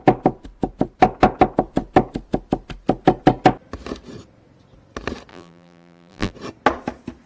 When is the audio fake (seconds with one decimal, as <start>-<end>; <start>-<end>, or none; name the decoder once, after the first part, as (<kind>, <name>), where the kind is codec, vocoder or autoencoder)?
5.3-6.3 (vocoder, BigVGAN v2)